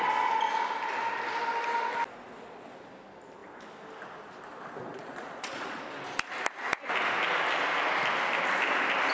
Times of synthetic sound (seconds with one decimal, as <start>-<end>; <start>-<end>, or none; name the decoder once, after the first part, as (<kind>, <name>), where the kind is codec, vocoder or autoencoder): 4.9-5.8 (vocoder, Vocos)